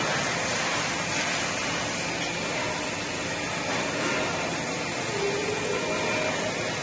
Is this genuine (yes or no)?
yes